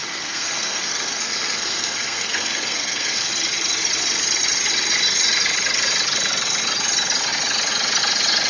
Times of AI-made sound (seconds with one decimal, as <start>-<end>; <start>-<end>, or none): 0.0-3.3